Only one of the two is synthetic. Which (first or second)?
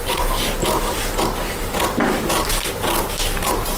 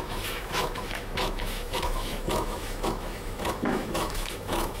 second